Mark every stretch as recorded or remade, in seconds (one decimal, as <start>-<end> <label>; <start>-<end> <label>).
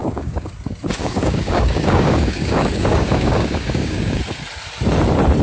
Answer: 0.0-0.5 remade; 0.5-1.0 recorded; 1.0-4.2 remade; 4.2-5.4 recorded